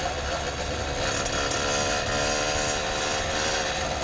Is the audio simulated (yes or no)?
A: no